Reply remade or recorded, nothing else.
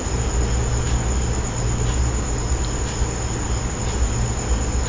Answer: recorded